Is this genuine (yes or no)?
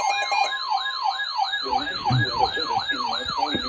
yes